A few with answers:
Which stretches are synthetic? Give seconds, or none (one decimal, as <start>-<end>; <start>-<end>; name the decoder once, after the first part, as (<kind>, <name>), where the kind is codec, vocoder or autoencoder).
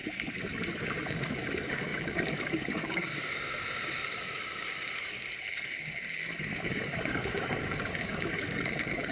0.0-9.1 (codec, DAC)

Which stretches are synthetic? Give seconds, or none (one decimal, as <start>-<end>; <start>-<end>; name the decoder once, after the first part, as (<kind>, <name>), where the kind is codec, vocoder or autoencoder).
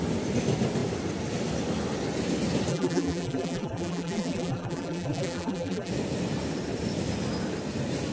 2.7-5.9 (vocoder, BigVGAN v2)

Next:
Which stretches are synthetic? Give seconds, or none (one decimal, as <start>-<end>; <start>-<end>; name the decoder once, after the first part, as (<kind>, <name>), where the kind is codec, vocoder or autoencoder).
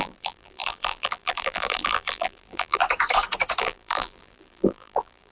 0.0-2.8 (vocoder, BigVGAN v2); 3.6-5.3